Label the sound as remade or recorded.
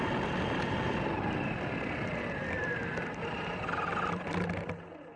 recorded